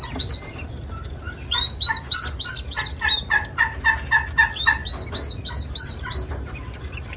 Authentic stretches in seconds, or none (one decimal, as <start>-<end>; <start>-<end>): 0.0-7.2